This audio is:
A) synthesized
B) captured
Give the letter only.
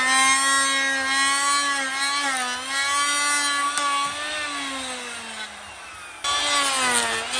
B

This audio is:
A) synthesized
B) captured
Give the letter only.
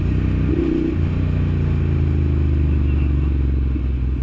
B